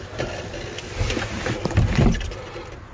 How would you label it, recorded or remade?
recorded